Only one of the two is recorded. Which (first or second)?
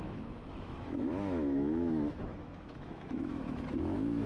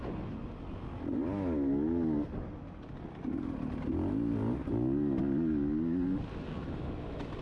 second